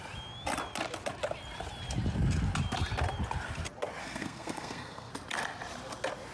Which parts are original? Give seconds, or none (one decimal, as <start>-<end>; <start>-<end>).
0.0-4.0; 5.1-6.3